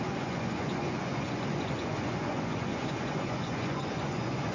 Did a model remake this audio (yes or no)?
yes